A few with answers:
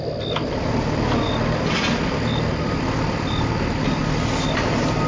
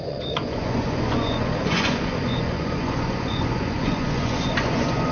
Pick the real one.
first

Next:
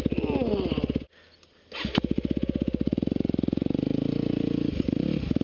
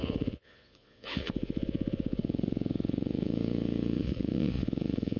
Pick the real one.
first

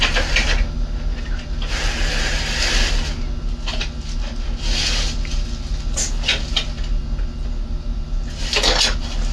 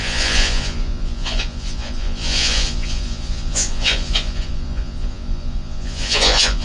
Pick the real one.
first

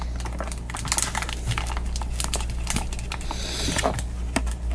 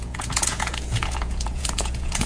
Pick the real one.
first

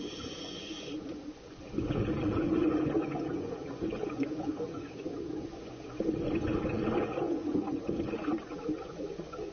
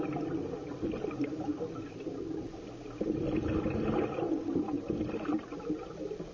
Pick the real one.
second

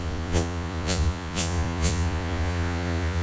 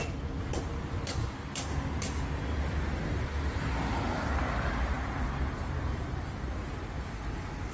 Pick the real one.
second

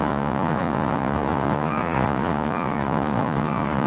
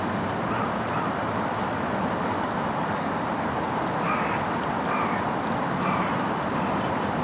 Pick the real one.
second